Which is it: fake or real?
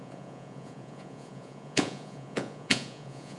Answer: fake